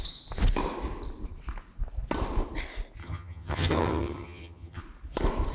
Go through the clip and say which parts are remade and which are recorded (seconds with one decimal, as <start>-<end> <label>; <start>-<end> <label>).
0.0-3.0 recorded; 3.0-4.8 remade; 4.8-5.5 recorded